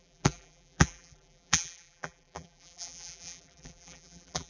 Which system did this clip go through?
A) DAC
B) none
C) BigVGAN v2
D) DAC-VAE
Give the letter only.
C